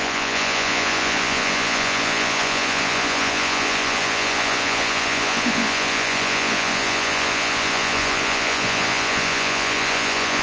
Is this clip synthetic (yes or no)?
yes